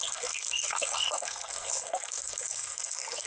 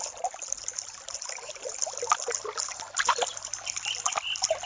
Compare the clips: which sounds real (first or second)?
second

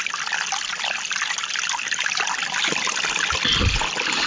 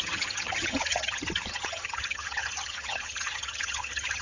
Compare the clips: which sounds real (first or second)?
first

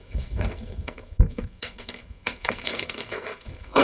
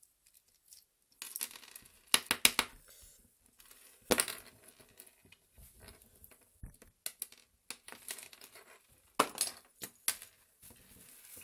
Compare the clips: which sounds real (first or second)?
second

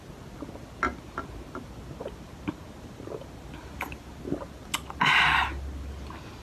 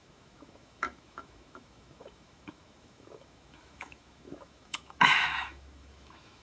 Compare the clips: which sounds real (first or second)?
first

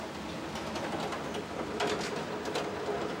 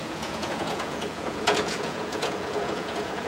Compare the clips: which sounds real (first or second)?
first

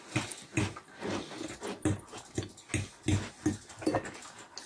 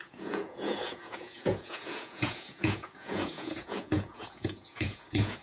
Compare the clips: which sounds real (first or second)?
first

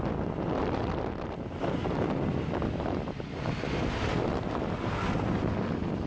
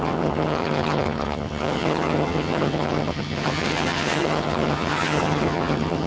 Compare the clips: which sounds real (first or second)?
first